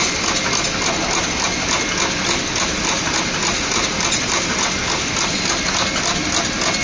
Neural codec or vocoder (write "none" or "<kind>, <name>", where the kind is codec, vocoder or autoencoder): none